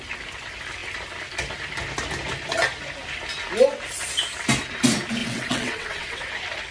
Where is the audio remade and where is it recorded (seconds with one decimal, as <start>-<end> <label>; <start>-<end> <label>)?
0.0-5.2 recorded; 5.2-6.3 remade; 6.3-6.7 recorded